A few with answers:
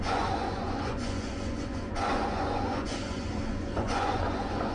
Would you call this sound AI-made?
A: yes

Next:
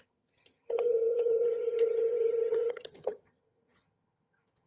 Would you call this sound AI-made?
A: yes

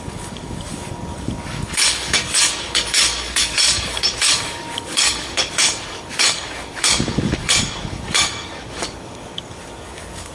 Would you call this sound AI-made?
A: yes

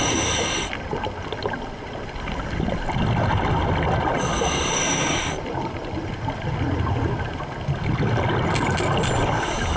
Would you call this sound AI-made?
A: no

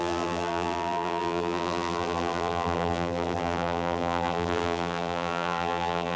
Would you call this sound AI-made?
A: yes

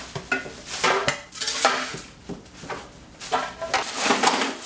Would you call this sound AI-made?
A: no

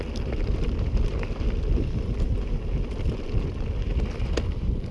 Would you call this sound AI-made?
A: no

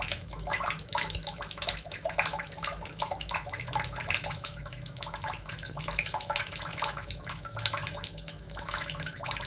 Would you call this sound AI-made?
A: yes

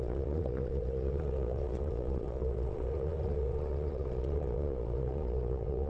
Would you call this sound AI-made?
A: yes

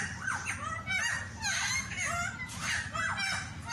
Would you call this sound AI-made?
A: no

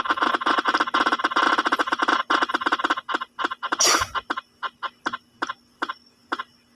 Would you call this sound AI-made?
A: no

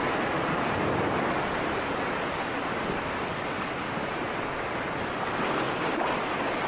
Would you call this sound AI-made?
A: no